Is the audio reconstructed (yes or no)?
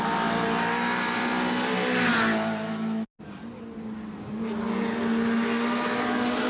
no